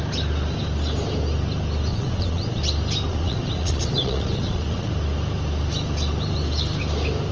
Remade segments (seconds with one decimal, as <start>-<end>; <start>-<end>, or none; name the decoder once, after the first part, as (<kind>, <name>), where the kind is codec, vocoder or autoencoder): 1.9-2.6 (vocoder, Vocos); 3.1-4.9